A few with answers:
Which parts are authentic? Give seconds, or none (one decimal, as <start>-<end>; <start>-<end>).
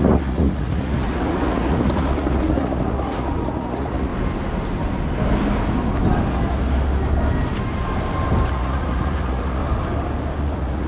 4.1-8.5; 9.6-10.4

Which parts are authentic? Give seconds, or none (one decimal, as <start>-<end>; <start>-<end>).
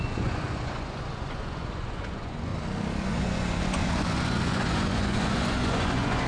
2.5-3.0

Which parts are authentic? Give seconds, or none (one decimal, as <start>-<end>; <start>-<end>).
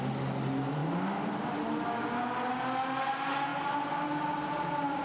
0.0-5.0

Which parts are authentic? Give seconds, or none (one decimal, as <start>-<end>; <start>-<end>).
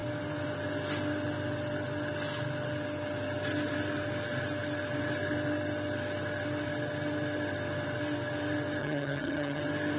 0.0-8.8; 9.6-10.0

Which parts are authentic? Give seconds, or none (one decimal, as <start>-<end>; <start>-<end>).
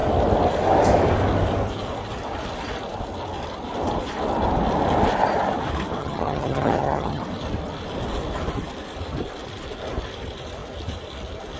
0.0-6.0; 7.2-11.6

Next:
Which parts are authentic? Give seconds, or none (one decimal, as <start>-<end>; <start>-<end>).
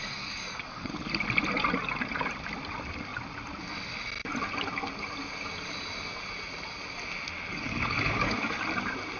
0.9-7.5; 8.6-9.2